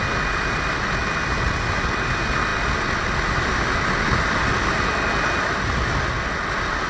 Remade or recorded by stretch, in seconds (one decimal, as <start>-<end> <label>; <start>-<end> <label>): 0.0-6.9 recorded